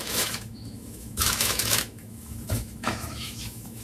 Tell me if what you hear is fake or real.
fake